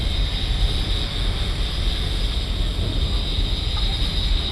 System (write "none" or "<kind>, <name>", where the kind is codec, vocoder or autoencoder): none